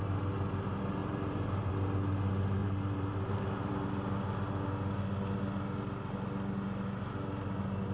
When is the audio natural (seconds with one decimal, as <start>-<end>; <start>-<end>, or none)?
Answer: 0.0-1.0; 1.7-2.6; 3.7-7.9